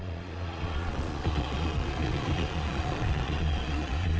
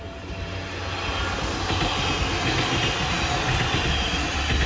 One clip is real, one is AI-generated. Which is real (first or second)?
second